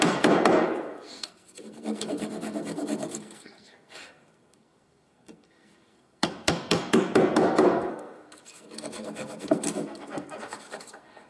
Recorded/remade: remade